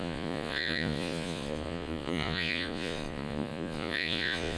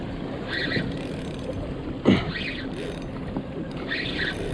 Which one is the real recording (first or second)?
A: second